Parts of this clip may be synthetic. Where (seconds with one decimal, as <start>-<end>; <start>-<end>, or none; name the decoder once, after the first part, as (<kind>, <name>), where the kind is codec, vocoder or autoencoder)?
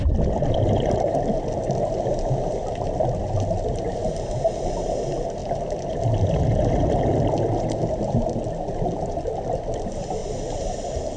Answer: none